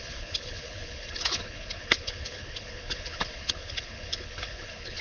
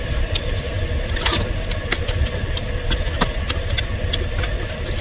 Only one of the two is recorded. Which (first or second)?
second